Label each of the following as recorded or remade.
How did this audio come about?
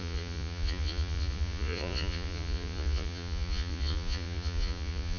remade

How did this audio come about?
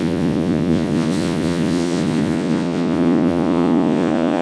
remade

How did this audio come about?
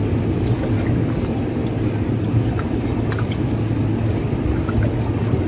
recorded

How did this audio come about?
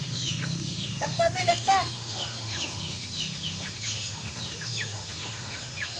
remade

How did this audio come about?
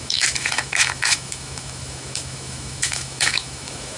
remade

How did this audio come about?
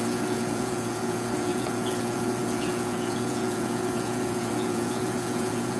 remade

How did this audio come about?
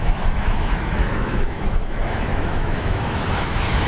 remade